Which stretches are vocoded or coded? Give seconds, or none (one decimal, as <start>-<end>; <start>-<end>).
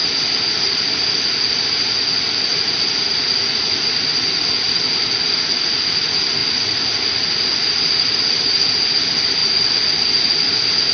none